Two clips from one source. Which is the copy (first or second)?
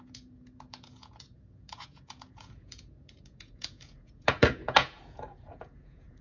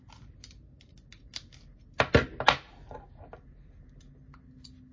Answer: first